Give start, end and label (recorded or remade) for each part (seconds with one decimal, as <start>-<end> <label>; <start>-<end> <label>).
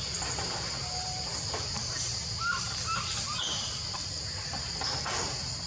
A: 0.0-2.2 remade; 2.2-5.2 recorded; 5.2-5.7 remade